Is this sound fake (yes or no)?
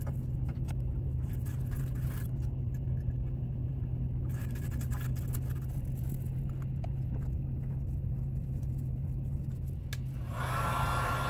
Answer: no